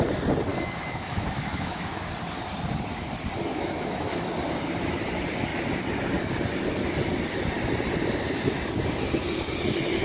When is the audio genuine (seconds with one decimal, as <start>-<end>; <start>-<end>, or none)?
0.0-0.5; 2.1-3.5; 4.3-10.0